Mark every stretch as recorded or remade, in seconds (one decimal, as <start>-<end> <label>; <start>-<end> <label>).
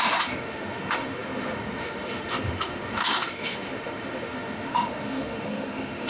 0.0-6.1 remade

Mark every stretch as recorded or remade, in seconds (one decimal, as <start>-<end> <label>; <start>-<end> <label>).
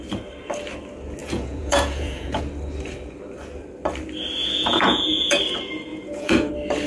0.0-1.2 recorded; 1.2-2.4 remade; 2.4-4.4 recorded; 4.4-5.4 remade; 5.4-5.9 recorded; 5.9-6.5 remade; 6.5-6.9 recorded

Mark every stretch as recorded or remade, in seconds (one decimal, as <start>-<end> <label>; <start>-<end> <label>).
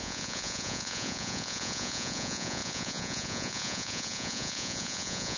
0.0-5.4 remade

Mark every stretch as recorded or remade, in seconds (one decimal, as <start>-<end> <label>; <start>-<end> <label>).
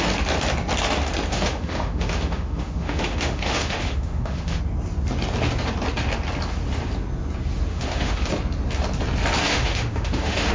0.0-1.3 recorded; 1.3-4.6 remade; 4.6-7.7 recorded; 7.7-8.3 remade; 8.3-9.5 recorded; 9.5-10.5 remade